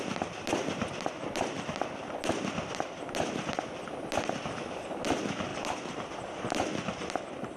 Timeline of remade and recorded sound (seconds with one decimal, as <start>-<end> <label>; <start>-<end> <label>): 0.0-7.6 remade